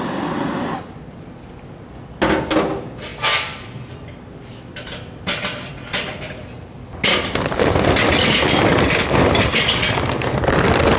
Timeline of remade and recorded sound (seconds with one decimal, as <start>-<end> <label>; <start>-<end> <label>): 0.0-11.0 recorded